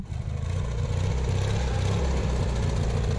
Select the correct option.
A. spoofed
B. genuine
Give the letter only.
B